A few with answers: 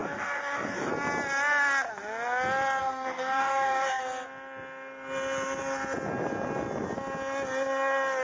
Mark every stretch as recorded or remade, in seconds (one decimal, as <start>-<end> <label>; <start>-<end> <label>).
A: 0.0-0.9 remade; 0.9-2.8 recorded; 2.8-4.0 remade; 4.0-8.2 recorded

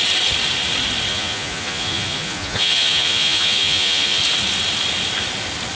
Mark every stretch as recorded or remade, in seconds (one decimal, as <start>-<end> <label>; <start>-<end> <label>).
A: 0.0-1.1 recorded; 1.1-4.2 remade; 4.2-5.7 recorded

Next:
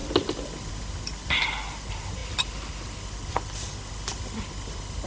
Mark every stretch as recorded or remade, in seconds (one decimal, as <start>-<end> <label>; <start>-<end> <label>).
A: 0.0-5.1 recorded

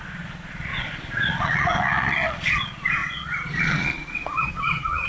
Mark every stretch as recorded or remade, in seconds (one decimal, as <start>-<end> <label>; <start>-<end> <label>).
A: 0.0-5.1 remade

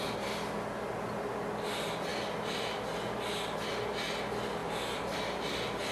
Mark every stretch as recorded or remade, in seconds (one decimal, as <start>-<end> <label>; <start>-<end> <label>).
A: 0.0-4.6 recorded; 4.6-5.4 remade; 5.4-5.9 recorded

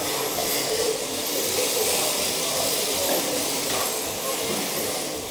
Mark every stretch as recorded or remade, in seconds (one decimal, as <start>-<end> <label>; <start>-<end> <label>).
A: 0.0-5.3 recorded